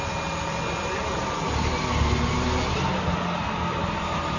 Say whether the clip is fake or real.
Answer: real